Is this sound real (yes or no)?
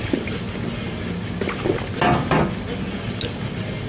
yes